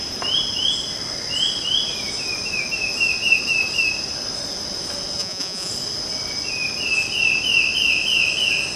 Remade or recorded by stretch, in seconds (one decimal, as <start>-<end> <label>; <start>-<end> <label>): 0.0-5.2 recorded; 5.2-5.7 remade; 5.7-8.8 recorded